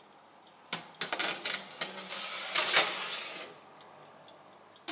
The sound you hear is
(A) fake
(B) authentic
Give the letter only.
B